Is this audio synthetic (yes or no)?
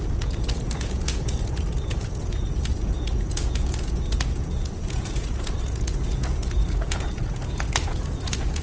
yes